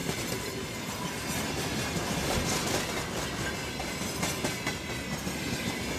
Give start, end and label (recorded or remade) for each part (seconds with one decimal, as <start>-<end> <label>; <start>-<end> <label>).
0.0-6.0 recorded